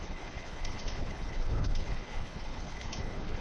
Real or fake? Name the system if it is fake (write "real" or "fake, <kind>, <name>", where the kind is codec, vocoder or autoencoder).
fake, codec, HILCodec